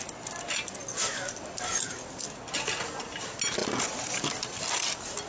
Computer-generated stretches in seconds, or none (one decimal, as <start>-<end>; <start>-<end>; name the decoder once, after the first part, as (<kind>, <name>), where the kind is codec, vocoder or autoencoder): none

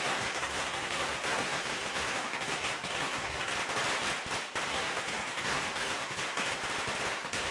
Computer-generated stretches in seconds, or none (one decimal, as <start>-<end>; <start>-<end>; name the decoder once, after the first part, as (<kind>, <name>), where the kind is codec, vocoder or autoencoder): 0.0-3.5 (codec, SNAC); 4.7-6.6; 7.1-7.5

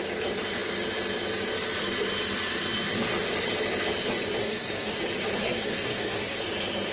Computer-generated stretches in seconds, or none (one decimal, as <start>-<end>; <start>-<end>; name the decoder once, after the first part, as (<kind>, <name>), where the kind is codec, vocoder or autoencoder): 4.4-5.0 (codec, SNAC); 5.4-6.4

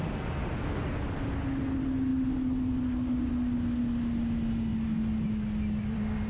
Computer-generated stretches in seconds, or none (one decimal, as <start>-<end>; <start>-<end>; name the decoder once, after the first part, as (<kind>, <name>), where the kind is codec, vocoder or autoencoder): none

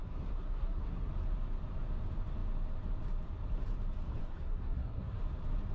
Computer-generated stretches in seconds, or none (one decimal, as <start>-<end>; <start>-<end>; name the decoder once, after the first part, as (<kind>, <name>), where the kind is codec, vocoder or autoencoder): 0.0-1.1 (codec, SNAC); 4.2-5.2